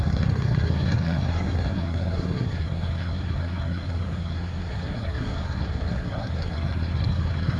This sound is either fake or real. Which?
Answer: fake